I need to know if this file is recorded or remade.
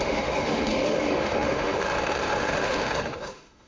remade